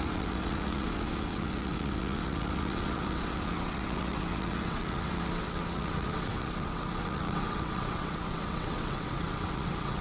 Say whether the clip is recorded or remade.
remade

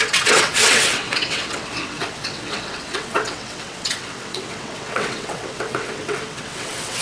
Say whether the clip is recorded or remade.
remade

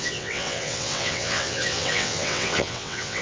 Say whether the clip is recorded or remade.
remade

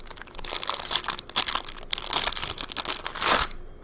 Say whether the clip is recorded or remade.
recorded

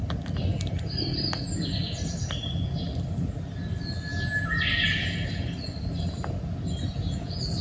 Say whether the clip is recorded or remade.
recorded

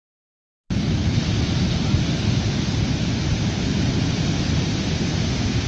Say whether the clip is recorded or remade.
recorded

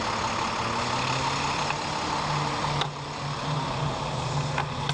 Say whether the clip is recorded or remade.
recorded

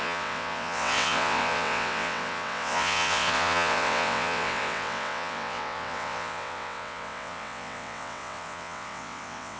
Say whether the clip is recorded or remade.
remade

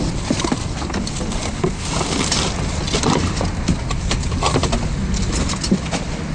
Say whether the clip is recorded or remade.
recorded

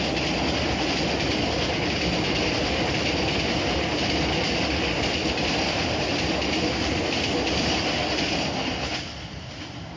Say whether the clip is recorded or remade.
recorded